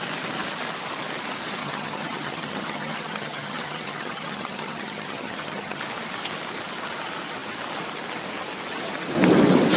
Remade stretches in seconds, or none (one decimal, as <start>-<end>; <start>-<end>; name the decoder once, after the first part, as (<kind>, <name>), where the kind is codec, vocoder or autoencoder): 1.6-5.8 (vocoder, HiFi-GAN)